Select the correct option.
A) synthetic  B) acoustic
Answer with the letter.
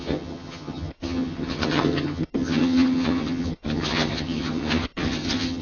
A